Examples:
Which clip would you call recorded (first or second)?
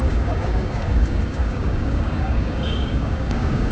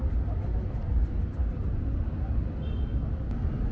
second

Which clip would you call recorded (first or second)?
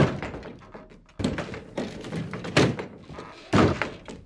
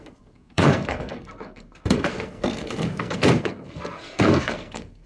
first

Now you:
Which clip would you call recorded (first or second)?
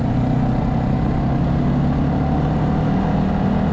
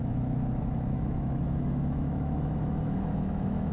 first